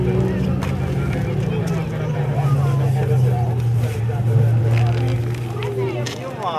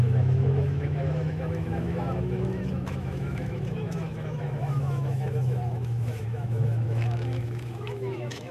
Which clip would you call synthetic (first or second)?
second